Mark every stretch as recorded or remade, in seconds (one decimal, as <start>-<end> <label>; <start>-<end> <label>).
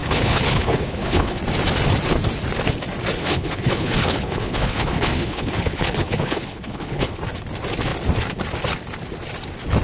0.0-1.4 remade; 1.4-3.2 recorded; 3.2-7.2 remade; 7.2-9.8 recorded